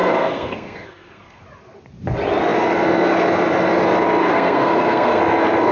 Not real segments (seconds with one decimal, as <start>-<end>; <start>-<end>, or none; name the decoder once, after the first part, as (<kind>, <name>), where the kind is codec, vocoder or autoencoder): 0.0-1.4 (codec, SNAC); 4.2-5.2